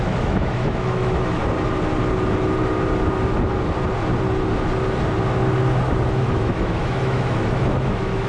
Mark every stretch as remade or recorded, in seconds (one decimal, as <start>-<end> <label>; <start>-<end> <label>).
0.0-1.4 remade; 1.4-6.2 recorded; 6.2-8.3 remade